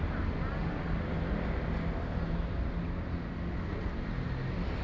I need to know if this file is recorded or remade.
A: recorded